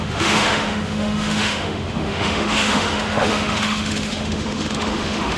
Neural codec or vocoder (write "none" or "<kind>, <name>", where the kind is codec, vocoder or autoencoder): autoencoder, DAC-VAE